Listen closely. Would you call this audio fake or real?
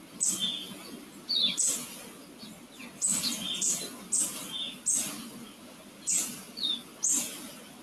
real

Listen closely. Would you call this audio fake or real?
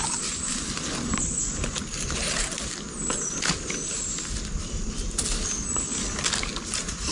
real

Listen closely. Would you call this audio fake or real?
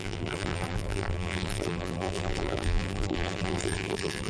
fake